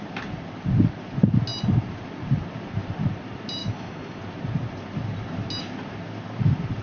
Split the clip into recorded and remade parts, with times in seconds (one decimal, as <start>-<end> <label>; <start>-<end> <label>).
0.0-3.6 recorded; 3.6-4.2 remade; 4.2-6.8 recorded